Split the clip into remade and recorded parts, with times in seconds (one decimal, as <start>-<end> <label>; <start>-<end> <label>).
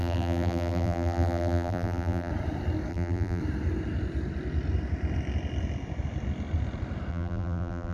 0.0-2.3 remade; 2.3-2.9 recorded; 2.9-3.4 remade; 3.4-7.1 recorded; 7.1-7.9 remade